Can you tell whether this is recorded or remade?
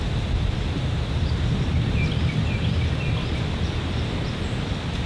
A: recorded